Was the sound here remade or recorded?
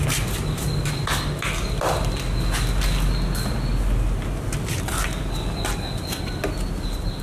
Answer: recorded